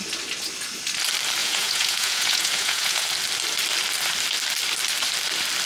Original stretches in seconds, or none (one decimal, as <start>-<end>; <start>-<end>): 0.0-1.4; 3.1-5.7

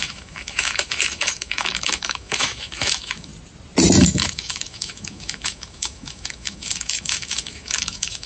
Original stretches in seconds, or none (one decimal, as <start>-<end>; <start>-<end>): 3.3-4.0